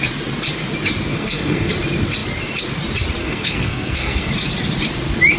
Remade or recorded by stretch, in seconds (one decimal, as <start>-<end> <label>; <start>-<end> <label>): 0.0-1.1 recorded; 1.1-1.7 remade; 1.7-3.2 recorded; 3.2-4.3 remade; 4.3-5.4 recorded